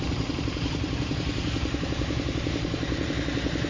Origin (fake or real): fake